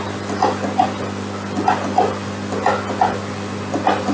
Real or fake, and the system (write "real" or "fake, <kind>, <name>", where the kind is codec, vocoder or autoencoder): real